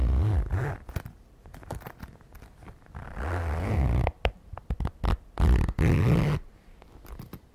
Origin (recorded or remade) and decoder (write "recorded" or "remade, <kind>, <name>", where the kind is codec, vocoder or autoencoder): recorded